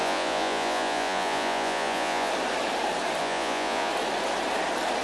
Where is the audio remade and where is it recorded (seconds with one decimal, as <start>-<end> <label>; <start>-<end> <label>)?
0.0-2.3 remade; 2.3-3.2 recorded; 3.2-3.9 remade; 3.9-5.0 recorded